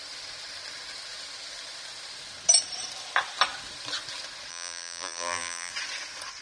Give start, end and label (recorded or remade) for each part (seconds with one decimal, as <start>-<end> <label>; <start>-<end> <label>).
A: 0.0-4.5 recorded; 4.5-5.7 remade; 5.7-6.4 recorded